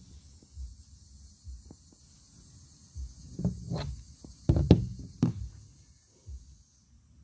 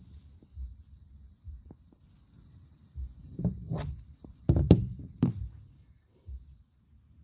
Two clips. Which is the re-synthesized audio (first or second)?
second